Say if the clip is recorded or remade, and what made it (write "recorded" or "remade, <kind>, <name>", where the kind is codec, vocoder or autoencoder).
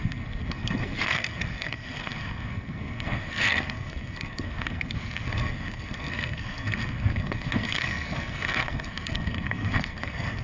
remade, codec, SNAC